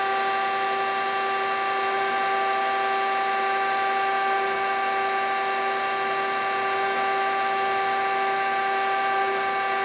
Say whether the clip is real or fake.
real